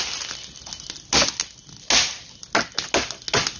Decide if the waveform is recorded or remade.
recorded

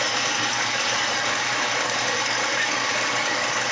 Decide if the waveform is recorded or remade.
remade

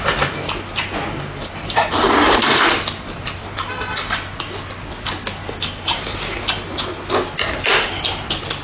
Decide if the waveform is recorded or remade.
recorded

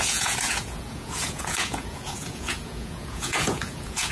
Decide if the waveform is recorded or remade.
remade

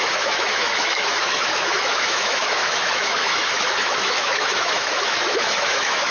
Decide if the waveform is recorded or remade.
remade